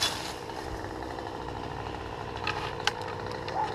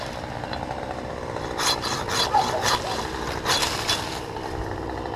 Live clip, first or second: second